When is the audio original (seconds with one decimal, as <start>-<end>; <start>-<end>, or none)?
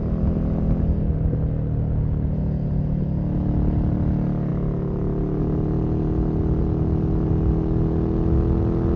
0.0-9.0